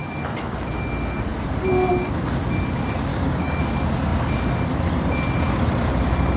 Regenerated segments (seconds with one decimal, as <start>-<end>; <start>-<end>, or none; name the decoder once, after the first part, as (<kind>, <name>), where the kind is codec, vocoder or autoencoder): 3.1-3.6 (codec, DAC)